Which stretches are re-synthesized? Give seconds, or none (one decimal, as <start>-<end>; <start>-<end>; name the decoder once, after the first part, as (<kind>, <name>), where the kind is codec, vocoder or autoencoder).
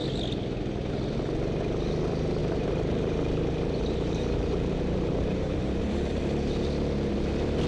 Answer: 2.4-6.2 (vocoder, BigVGAN v2)